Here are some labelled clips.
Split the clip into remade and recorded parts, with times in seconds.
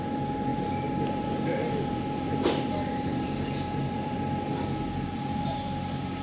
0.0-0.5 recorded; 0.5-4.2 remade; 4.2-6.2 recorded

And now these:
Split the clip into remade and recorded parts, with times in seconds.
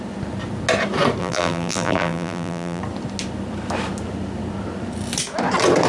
0.0-1.2 recorded; 1.2-2.8 remade; 2.8-5.9 recorded